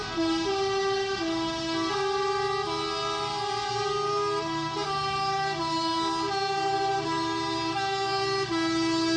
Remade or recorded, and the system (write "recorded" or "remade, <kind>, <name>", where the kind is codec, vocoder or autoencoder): recorded